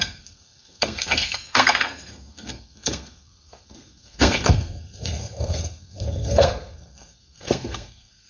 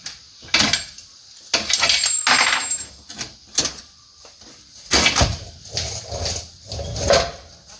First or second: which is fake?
first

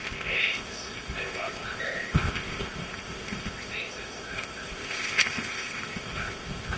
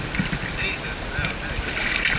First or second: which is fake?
first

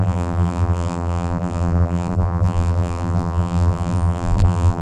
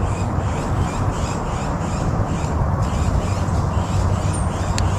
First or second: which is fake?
first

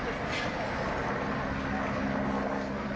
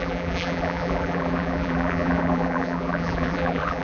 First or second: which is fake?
second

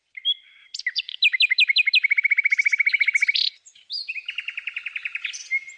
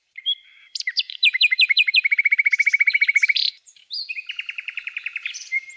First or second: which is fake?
second